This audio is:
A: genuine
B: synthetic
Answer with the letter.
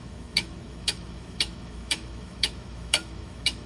B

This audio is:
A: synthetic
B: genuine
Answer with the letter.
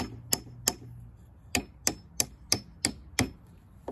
B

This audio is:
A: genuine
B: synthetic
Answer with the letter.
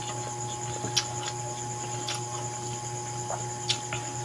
A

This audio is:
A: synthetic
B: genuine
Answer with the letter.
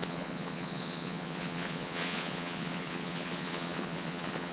A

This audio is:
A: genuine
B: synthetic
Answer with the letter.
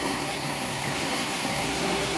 B